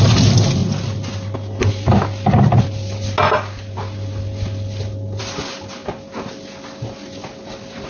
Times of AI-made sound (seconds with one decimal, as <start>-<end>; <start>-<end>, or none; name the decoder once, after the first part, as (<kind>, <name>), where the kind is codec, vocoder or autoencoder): none

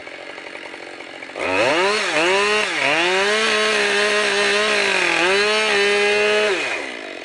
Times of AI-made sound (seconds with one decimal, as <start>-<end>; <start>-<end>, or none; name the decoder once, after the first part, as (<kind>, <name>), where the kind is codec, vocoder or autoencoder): none

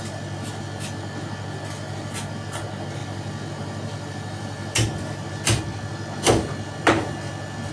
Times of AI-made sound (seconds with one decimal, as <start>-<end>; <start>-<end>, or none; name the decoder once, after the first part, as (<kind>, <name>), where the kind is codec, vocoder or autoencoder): 3.0-7.7 (vocoder, BigVGAN v2)

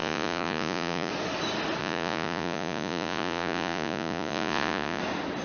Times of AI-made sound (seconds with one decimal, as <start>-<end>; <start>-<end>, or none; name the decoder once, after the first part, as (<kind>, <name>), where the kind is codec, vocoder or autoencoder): 0.0-1.1 (vocoder, Vocos); 1.8-5.0

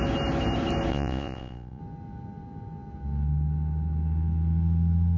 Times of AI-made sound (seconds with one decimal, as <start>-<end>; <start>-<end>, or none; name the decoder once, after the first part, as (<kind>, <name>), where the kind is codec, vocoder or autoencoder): 0.9-1.8 (vocoder, Vocos)